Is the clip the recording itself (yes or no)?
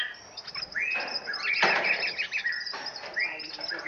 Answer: yes